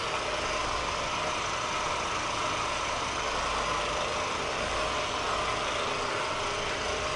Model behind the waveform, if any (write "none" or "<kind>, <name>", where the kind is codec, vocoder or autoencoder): none